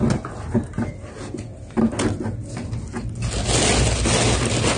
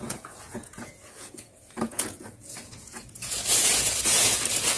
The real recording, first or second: first